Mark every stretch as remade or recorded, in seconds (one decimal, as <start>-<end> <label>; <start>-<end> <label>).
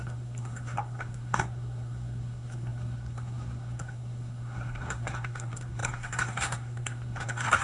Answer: 0.0-7.6 remade